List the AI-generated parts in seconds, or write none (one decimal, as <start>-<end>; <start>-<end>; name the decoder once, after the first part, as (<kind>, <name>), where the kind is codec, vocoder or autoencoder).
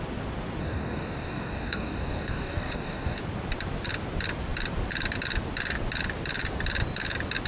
0.6-3.2 (codec, DAC)